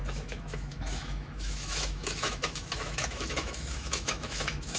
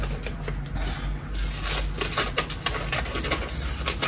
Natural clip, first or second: second